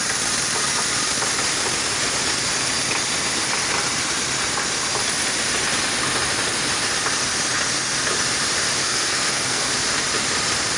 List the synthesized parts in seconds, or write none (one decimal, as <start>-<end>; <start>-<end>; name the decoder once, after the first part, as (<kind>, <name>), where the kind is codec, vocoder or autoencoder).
8.8-9.7 (codec, SNAC)